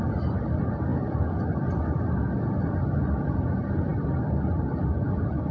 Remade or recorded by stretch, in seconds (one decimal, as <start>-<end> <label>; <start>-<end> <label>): 0.0-0.9 remade; 0.9-3.0 recorded; 3.0-5.5 remade